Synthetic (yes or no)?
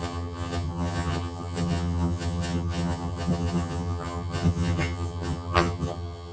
yes